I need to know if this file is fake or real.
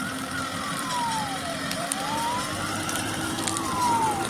fake